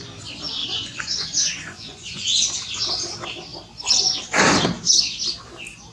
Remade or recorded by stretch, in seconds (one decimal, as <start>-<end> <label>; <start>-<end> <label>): 0.0-0.6 recorded; 0.6-2.4 remade; 2.4-5.9 recorded